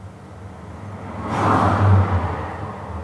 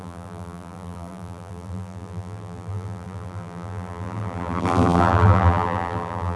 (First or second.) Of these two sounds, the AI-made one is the second